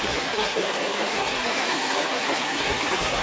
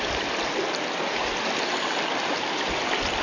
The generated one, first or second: first